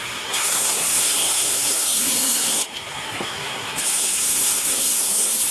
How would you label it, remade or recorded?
remade